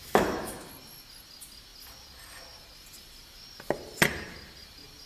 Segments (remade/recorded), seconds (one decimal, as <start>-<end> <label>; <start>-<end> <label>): 0.0-0.7 remade; 0.7-5.1 recorded